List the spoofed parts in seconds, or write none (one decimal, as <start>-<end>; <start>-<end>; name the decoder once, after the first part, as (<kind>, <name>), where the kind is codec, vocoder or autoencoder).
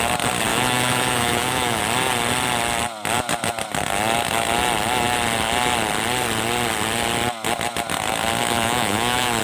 0.5-1.8 (autoencoder, DAC-VAE); 8.4-9.4